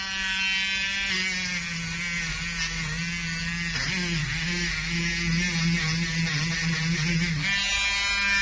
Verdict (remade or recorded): recorded